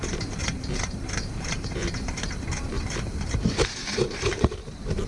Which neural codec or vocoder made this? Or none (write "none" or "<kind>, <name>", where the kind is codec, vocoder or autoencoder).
vocoder, BigVGAN v2